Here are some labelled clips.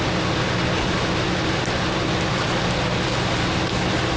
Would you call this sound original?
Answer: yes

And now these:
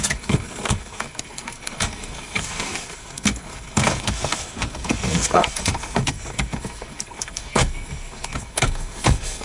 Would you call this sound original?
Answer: no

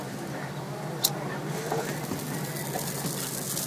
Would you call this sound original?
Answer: yes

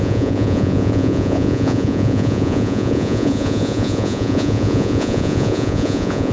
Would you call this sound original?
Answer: no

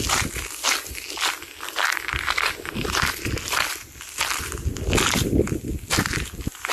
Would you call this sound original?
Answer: yes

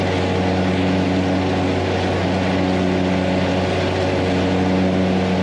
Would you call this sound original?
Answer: yes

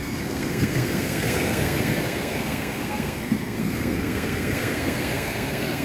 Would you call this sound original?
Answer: no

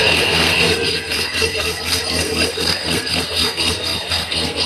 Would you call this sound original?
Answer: no